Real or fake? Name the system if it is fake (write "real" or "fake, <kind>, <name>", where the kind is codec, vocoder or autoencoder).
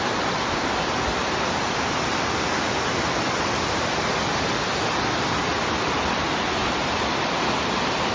real